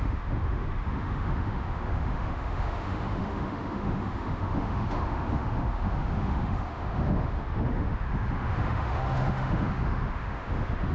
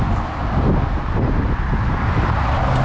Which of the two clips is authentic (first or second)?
second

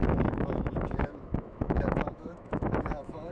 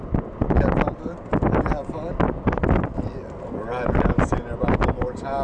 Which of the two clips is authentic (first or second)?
second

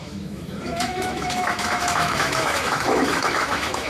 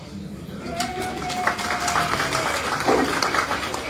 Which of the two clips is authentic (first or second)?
second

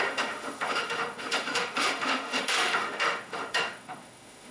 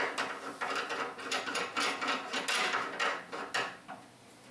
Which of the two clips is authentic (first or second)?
second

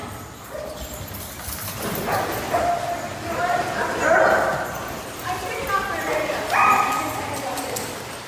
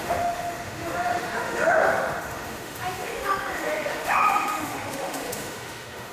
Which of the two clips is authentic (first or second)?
first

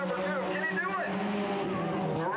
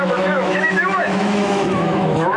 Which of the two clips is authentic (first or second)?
first